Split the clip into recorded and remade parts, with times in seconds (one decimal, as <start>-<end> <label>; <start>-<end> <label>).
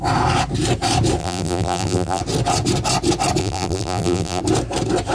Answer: 0.0-1.2 recorded; 1.2-2.2 remade; 2.2-3.4 recorded; 3.4-4.4 remade; 4.4-5.1 recorded